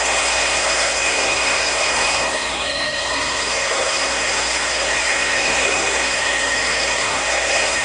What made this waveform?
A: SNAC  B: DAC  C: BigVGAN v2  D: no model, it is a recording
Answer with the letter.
A